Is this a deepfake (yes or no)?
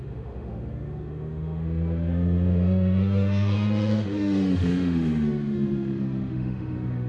yes